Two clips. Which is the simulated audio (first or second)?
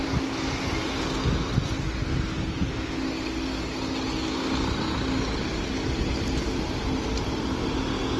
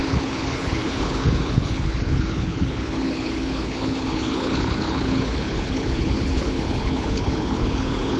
second